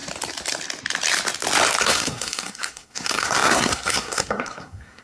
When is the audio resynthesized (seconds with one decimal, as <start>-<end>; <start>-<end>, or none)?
1.8-5.0

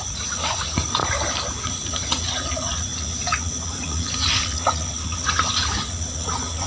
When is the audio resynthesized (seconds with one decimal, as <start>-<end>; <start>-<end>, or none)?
0.0-1.0; 1.6-6.7

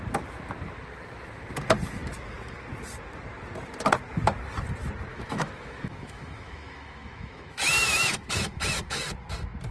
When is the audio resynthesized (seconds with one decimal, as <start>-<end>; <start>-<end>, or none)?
5.1-9.0

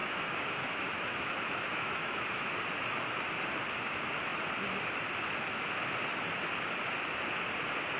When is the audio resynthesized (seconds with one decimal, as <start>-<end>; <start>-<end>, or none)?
0.0-2.5

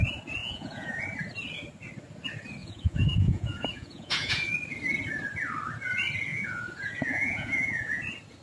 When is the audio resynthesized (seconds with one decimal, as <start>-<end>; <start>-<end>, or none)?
0.4-1.0; 2.6-4.5; 6.3-8.0

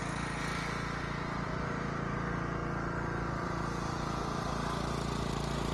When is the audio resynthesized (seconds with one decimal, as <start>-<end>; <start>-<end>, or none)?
0.0-2.6; 3.4-5.7

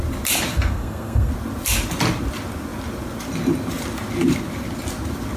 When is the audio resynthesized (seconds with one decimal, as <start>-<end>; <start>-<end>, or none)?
0.5-1.3

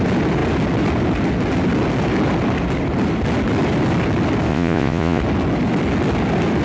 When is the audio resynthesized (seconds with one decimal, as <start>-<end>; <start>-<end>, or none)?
4.5-5.2